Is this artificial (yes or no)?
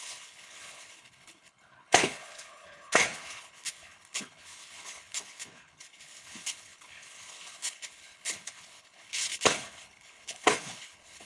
yes